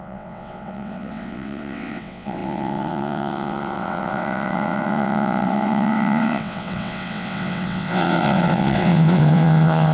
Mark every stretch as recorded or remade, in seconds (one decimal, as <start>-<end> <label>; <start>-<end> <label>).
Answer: 0.0-9.9 remade